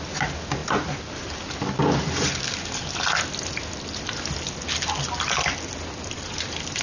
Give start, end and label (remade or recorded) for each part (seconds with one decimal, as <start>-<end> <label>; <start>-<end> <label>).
0.0-6.8 recorded